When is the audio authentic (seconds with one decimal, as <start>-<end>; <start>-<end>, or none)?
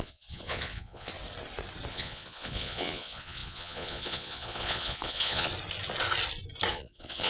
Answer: 1.1-1.9; 5.5-6.7